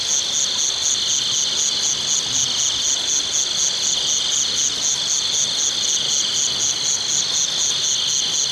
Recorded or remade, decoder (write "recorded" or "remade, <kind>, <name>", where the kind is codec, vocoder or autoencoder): recorded